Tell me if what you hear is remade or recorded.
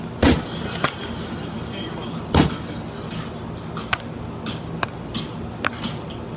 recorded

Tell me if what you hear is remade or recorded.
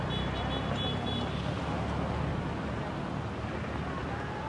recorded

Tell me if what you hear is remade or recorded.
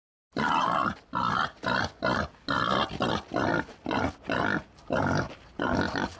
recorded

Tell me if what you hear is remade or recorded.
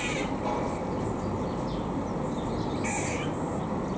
recorded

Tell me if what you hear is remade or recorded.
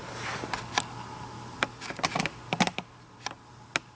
recorded